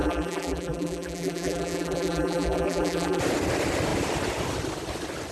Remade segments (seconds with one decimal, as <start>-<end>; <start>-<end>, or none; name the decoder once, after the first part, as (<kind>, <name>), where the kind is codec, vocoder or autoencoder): 0.0-3.2 (vocoder, BigVGAN v2)